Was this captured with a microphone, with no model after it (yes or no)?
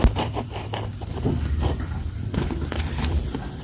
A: no